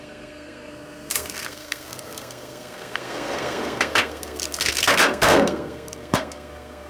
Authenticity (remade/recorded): remade